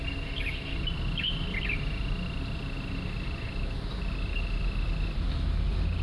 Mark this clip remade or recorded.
recorded